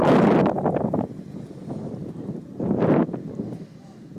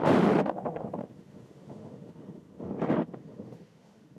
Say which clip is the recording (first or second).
first